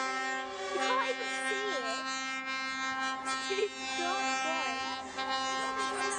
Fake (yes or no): no